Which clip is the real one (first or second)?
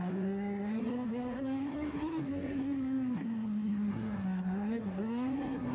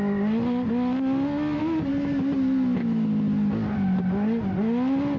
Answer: second